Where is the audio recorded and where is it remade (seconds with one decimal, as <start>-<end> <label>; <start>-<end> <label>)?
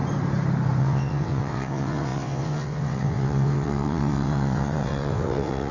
0.0-0.8 recorded; 0.8-5.7 remade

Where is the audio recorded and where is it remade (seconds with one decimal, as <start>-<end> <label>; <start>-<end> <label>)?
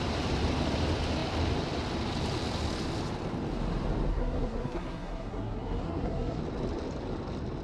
0.0-4.1 recorded; 4.1-6.4 remade; 6.4-7.6 recorded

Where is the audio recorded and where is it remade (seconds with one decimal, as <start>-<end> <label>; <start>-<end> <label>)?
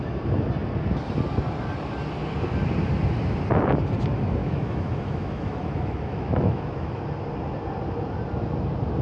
0.0-4.4 recorded; 4.4-7.0 remade; 7.0-9.0 recorded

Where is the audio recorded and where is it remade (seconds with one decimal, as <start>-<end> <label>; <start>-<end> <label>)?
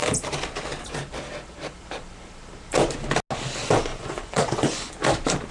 0.0-3.9 recorded; 3.9-4.9 remade; 4.9-5.5 recorded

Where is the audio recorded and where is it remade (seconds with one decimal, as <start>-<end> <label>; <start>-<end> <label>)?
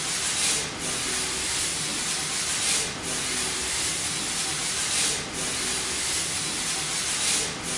0.0-1.9 recorded; 1.9-2.8 remade; 2.8-4.5 recorded; 4.5-5.4 remade; 5.4-7.8 recorded